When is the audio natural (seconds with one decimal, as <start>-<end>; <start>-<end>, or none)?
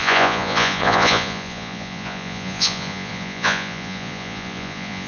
none